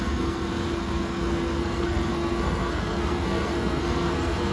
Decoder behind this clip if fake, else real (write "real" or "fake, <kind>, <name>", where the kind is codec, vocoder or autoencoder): fake, codec, SNAC